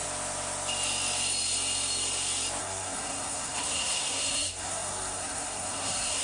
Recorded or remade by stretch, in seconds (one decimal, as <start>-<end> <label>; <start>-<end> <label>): 0.0-2.6 recorded; 2.6-6.2 remade